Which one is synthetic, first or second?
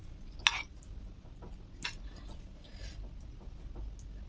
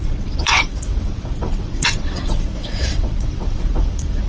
second